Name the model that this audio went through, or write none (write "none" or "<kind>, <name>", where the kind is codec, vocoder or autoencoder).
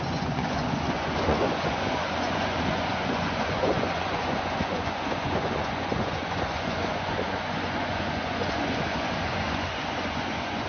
vocoder, Vocos